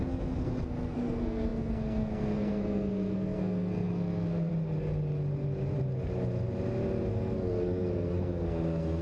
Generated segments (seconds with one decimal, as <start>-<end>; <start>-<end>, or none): 0.0-4.5; 7.1-9.0